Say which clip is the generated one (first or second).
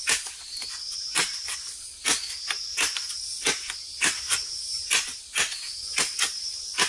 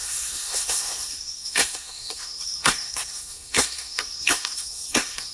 second